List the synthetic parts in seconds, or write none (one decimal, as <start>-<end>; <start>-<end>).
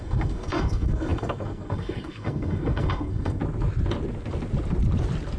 0.0-3.4